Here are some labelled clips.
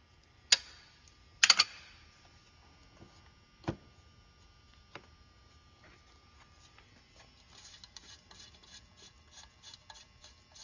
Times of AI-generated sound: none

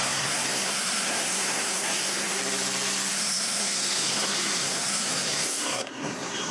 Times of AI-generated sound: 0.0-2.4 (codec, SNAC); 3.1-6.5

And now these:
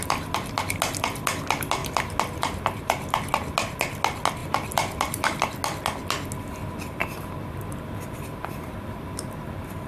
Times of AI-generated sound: 7.0-9.3 (vocoder, BigVGAN v2)